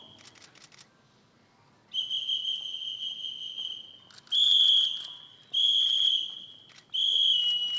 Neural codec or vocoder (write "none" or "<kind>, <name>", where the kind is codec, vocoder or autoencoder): none